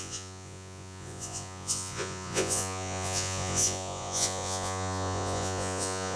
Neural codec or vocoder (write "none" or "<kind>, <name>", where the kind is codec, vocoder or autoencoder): vocoder, Vocos